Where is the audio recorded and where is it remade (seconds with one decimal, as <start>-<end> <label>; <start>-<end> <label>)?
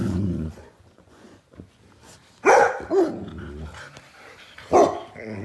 0.0-1.8 remade; 1.8-5.4 recorded